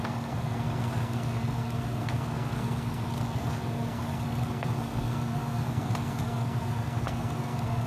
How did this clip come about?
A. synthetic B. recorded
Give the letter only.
A